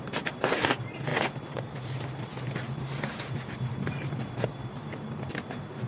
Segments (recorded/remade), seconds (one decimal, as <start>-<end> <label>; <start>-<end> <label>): 0.0-5.9 recorded